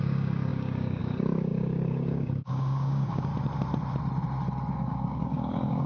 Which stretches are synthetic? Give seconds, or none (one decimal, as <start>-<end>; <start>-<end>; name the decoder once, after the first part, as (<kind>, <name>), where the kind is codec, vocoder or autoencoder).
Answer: 0.0-3.3 (codec, DAC); 4.7-5.9